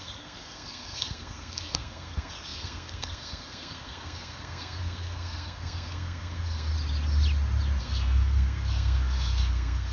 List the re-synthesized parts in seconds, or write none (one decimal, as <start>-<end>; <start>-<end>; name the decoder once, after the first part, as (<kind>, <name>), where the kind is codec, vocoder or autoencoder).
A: 0.0-6.7 (codec, SNAC); 7.8-9.9

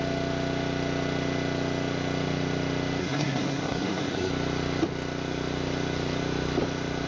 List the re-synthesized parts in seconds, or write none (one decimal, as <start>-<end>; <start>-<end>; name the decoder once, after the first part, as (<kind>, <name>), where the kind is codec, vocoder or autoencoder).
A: 3.0-4.3 (codec, SNAC)